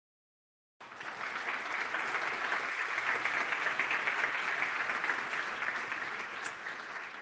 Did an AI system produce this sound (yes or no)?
no